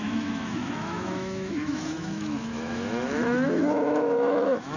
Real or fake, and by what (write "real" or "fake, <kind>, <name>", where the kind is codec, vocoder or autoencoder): fake, autoencoder, DAC-VAE